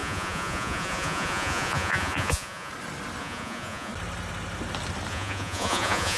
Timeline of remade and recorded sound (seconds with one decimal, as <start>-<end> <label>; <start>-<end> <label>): 0.0-2.7 remade; 2.7-3.2 recorded; 3.2-3.9 remade; 3.9-5.1 recorded; 5.1-6.2 remade